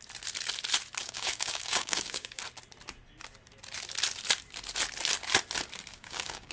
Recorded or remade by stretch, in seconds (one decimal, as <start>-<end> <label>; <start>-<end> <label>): 0.0-1.0 recorded; 1.0-2.4 remade; 2.4-5.9 recorded; 5.9-6.5 remade